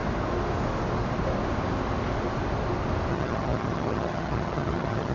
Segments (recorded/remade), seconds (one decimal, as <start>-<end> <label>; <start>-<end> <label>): 0.0-3.1 recorded; 3.1-5.1 remade

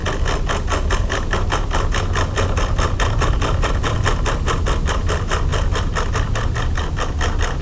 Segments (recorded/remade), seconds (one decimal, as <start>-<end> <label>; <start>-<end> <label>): 0.0-7.6 recorded

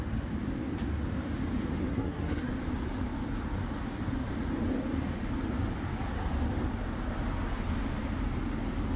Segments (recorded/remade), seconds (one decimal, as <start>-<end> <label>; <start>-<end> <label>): 0.0-1.9 recorded; 1.9-2.5 remade; 2.5-9.0 recorded

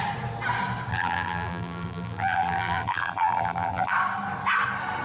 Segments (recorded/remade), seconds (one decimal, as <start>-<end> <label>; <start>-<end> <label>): 0.0-0.9 recorded; 0.9-3.9 remade; 3.9-5.0 recorded

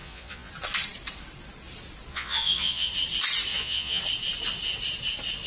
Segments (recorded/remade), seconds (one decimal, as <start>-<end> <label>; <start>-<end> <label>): 0.0-0.5 remade; 0.5-2.1 recorded; 2.1-2.9 remade; 2.9-3.5 recorded; 3.5-4.0 remade; 4.0-5.5 recorded